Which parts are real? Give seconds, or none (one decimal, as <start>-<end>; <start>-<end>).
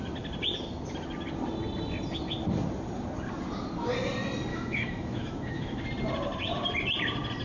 0.0-4.5; 5.9-7.4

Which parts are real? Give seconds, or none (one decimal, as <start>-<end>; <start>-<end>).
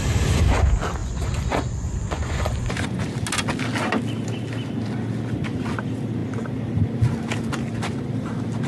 0.0-1.0; 3.0-8.7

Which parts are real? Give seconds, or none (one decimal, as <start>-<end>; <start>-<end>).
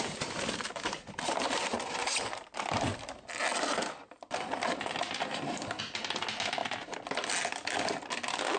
0.0-2.0; 5.8-8.6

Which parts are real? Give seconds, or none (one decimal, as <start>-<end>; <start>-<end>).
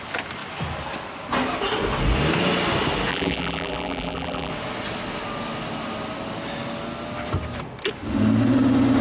0.0-3.1; 4.5-9.0